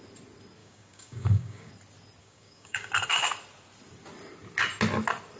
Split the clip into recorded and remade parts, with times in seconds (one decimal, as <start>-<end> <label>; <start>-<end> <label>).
0.0-0.6 recorded; 0.6-1.7 remade; 1.7-2.2 recorded; 2.2-2.9 remade; 2.9-5.4 recorded